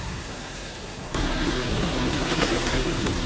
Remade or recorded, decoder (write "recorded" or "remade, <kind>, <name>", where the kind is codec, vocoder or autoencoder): remade, codec, SNAC